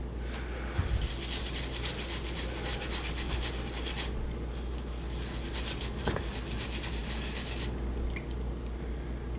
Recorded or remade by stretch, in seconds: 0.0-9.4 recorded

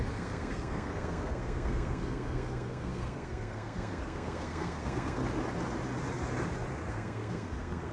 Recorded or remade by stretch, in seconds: 0.0-5.2 remade; 5.2-6.9 recorded; 6.9-7.9 remade

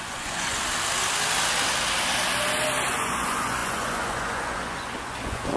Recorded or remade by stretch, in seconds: 0.0-0.6 remade; 0.6-2.9 recorded; 2.9-5.6 remade

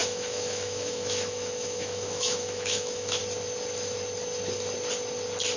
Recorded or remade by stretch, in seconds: 0.0-3.2 remade; 3.2-5.6 recorded

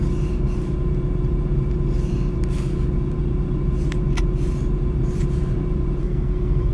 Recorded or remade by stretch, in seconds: 0.0-6.0 recorded; 6.0-6.7 remade

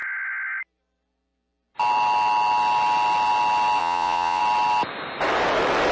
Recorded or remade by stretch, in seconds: 0.0-3.8 recorded; 3.8-4.4 remade; 4.4-5.9 recorded

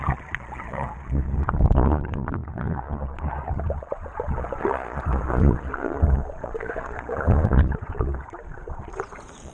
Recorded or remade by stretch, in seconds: 0.0-9.5 remade

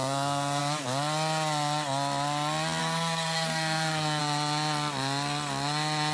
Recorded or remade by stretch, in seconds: 0.0-0.6 remade; 0.6-2.8 recorded; 2.8-4.2 remade; 4.2-6.1 recorded